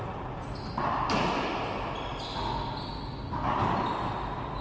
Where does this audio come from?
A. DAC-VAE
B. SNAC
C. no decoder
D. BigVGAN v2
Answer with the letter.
C